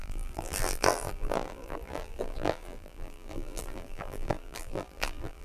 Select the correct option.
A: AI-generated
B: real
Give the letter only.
A